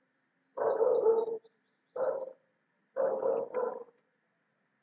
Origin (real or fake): fake